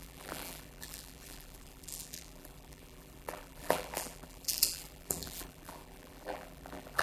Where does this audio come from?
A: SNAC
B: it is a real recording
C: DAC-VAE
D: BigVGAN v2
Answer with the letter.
D